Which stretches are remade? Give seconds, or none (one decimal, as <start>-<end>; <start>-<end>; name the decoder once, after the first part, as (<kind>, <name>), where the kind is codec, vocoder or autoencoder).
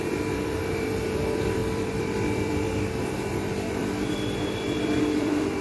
0.0-5.6 (vocoder, BigVGAN v2)